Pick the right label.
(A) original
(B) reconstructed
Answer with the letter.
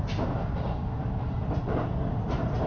A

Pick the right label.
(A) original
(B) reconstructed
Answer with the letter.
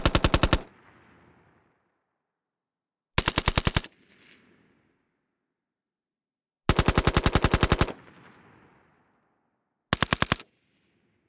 A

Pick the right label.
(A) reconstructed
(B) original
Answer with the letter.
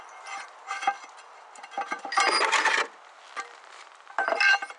B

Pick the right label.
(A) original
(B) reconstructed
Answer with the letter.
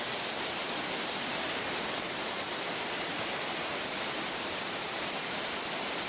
B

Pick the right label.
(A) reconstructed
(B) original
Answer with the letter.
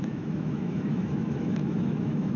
A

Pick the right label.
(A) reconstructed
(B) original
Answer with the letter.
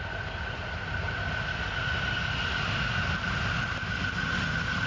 B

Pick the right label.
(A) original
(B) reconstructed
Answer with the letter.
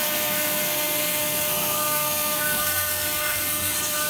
B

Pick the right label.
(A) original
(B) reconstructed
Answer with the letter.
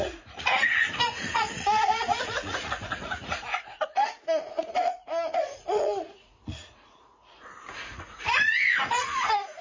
B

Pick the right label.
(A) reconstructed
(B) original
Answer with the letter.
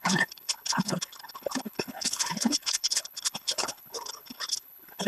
A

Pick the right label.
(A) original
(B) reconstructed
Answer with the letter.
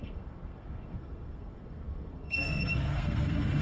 B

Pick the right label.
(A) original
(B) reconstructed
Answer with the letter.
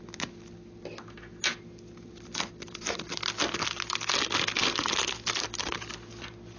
A